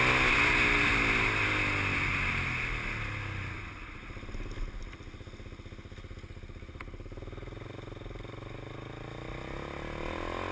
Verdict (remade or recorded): recorded